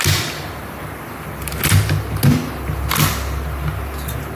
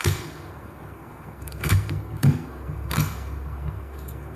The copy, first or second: second